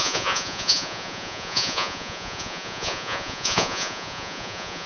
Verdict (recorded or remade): remade